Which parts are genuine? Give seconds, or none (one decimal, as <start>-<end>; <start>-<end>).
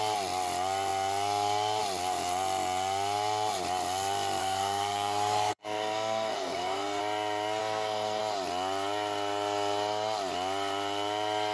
0.0-4.4; 7.0-7.6; 8.2-11.5